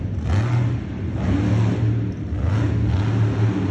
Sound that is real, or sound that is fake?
real